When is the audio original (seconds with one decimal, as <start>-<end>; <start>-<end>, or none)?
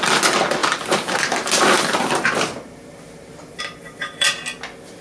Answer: 0.0-0.6; 3.6-5.0